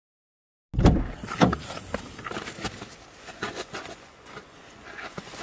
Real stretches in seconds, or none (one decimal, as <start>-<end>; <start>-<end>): 0.0-3.2